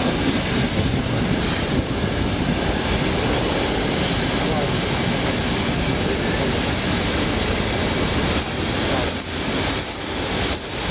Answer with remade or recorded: recorded